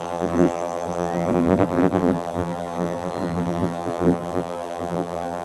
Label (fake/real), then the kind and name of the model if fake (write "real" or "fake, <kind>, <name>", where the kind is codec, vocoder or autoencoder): fake, vocoder, BigVGAN v2